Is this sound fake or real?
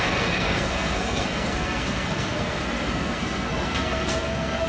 fake